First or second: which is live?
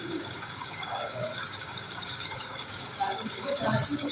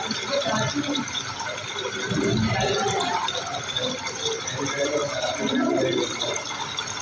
second